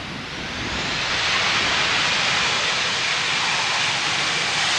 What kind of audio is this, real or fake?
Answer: real